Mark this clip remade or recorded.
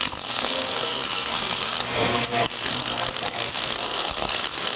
remade